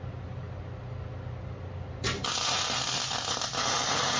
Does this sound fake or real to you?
real